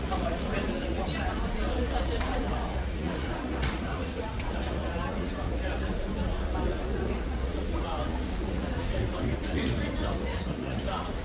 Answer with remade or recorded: remade